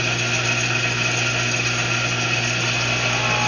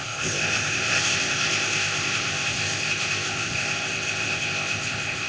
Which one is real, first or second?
first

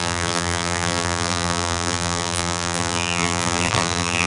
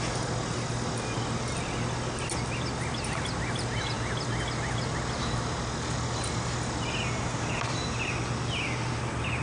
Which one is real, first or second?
second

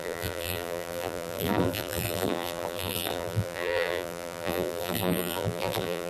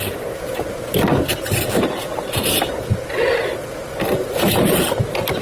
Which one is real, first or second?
second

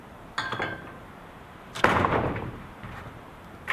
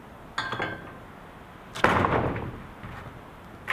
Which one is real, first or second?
second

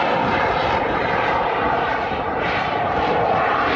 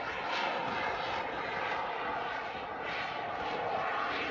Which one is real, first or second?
second